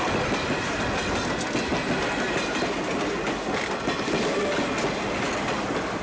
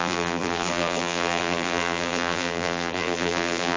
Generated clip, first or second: second